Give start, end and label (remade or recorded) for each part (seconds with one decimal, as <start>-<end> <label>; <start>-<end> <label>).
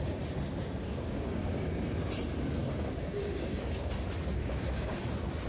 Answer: 0.0-0.9 recorded; 0.9-1.7 remade; 1.7-2.6 recorded; 2.6-3.9 remade; 3.9-4.4 recorded; 4.4-5.1 remade; 5.1-5.5 recorded